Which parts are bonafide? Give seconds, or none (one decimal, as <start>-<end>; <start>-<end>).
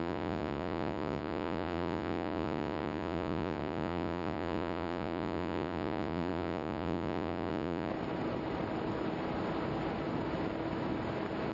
7.9-11.5